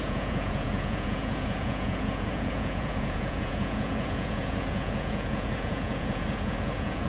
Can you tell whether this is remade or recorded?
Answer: remade